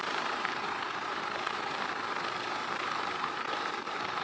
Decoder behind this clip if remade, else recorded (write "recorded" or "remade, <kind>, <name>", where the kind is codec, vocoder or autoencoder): remade, vocoder, BigVGAN v2